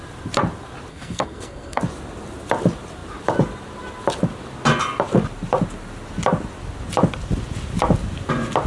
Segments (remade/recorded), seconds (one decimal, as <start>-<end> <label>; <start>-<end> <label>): 0.0-0.9 recorded; 0.9-1.8 remade; 1.8-8.7 recorded